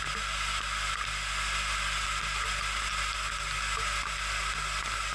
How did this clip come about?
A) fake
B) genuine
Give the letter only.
B